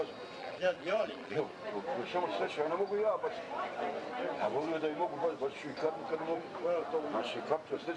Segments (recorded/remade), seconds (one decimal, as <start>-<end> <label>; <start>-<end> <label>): 0.0-0.4 recorded; 0.4-1.4 remade; 1.4-8.0 recorded